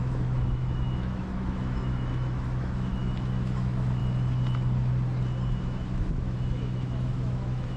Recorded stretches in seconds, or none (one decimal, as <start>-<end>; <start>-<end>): 4.0-5.6